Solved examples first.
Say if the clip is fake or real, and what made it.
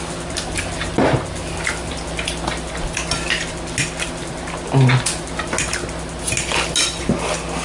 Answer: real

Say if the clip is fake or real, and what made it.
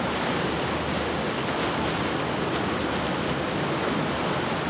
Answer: real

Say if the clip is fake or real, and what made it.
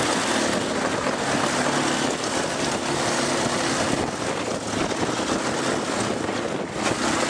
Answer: real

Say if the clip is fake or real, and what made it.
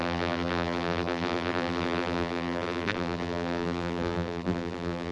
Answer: fake, vocoder, BigVGAN v2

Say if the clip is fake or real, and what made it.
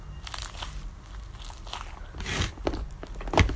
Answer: real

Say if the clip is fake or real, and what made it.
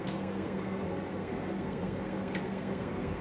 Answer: fake, codec, SNAC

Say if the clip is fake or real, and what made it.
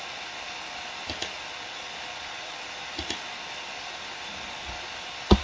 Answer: real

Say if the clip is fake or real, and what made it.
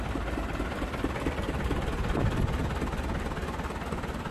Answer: real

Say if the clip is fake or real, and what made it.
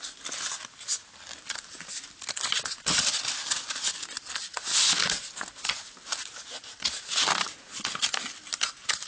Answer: real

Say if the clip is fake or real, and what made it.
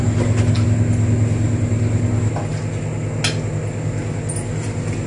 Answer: real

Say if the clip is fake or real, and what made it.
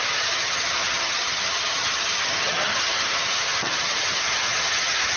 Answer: fake, vocoder, HiFi-GAN